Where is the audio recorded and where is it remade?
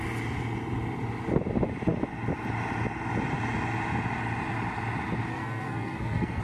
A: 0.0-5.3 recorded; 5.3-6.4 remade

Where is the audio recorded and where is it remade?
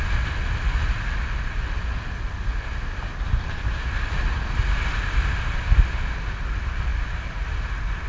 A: 0.0-8.1 recorded